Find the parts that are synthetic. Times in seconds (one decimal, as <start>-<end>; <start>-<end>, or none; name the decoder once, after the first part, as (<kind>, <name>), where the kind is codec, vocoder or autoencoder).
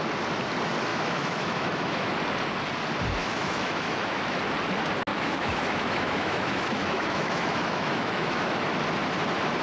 0.9-2.1 (autoencoder, DAC-VAE); 3.2-4.4; 5.1-8.6